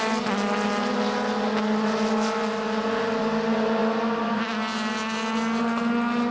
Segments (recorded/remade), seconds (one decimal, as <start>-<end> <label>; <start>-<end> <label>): 0.0-6.3 recorded